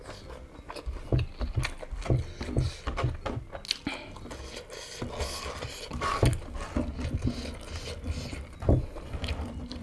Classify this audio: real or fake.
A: real